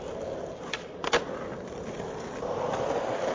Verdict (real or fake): real